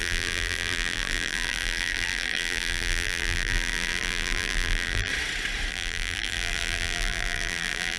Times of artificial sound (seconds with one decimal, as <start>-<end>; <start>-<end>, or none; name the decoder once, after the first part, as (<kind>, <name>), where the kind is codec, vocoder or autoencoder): 0.0-5.1 (vocoder, BigVGAN v2); 5.7-8.0